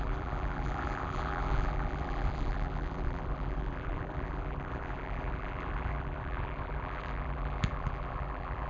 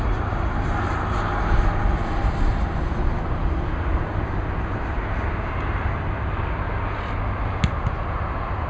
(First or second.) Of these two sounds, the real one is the second